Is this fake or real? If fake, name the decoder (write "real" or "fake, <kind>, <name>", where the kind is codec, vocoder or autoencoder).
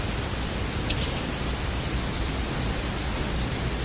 real